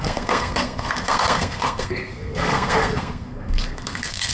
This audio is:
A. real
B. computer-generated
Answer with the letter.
B